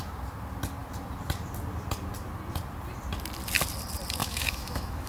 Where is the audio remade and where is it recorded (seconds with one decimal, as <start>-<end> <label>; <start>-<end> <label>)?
0.0-4.2 recorded; 4.2-5.1 remade